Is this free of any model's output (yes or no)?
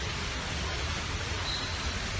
yes